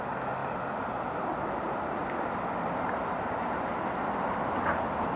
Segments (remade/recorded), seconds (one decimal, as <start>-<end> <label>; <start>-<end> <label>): 0.0-0.4 recorded; 0.4-3.5 remade; 3.5-5.2 recorded